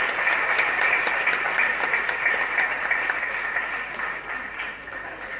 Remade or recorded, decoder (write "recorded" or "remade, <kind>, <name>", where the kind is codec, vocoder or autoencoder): remade, vocoder, BigVGAN v2